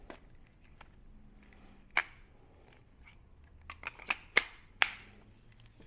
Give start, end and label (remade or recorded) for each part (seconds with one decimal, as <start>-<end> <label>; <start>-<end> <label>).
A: 0.0-5.9 recorded